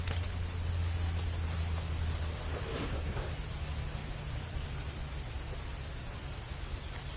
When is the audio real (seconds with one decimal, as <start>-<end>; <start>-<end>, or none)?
0.0-2.8; 3.3-7.2